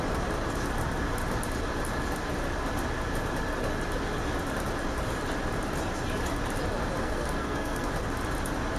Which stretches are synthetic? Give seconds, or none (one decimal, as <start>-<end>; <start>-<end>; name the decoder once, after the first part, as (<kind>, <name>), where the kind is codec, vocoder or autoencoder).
7.0-7.9 (codec, SNAC)

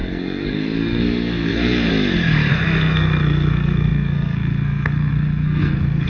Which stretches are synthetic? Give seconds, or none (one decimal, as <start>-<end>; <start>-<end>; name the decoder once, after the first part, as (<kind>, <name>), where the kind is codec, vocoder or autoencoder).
0.0-1.9 (codec, SNAC); 2.5-6.1

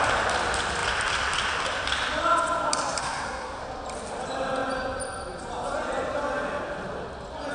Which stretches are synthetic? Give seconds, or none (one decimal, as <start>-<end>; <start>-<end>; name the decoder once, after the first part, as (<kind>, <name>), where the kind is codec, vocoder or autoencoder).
3.0-3.6 (codec, SNAC)

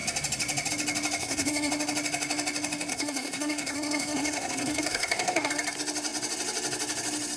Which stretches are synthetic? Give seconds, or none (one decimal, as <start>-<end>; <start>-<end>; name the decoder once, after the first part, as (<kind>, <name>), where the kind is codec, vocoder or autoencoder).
1.2-1.7 (codec, SNAC); 2.9-5.5